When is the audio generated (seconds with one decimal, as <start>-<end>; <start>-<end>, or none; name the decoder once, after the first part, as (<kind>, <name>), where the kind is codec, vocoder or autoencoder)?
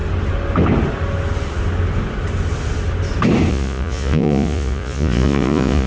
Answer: 3.5-5.9 (vocoder, Vocos)